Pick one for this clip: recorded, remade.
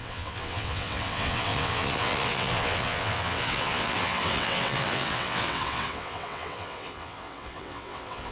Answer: remade